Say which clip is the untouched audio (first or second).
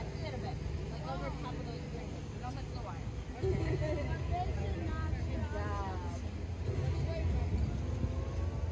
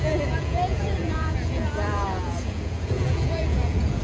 first